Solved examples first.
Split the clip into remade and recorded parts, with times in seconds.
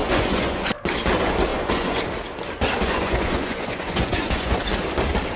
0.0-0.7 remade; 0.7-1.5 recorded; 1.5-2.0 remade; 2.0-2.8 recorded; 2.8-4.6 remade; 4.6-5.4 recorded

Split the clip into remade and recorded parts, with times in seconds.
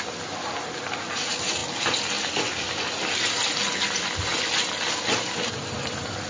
0.0-6.3 recorded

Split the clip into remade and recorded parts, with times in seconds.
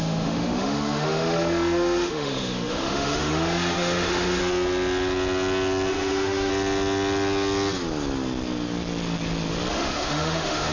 0.0-4.4 remade; 4.4-5.9 recorded; 5.9-6.5 remade; 6.5-9.7 recorded; 9.7-10.7 remade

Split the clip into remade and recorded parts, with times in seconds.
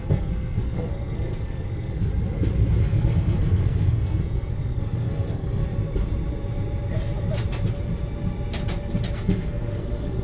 0.0-2.1 remade; 2.1-2.8 recorded; 2.8-5.6 remade; 5.6-9.1 recorded; 9.1-10.2 remade